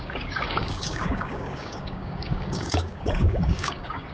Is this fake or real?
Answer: fake